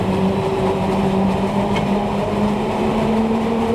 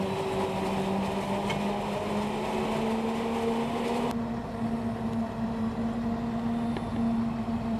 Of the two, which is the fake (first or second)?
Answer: first